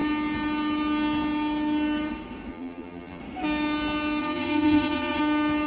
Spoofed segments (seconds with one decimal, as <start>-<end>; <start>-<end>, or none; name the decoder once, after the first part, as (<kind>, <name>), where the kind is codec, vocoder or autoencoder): 2.5-3.2 (vocoder, BigVGAN v2); 4.2-5.2